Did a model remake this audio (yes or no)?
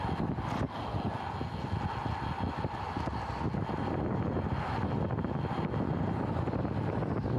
no